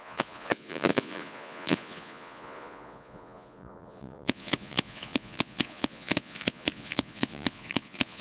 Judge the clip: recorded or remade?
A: remade